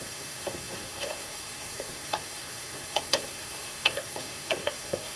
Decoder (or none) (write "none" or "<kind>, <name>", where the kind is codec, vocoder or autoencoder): codec, SNAC